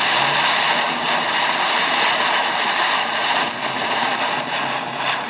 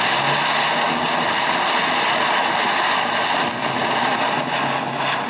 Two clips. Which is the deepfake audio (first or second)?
first